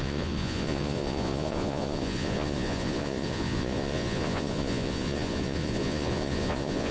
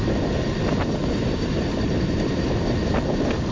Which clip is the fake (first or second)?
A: first